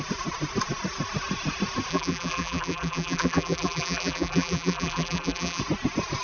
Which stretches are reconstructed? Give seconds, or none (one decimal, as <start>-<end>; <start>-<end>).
1.9-5.6